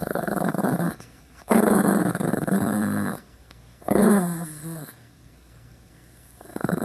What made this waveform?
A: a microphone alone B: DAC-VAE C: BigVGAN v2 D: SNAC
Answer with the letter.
D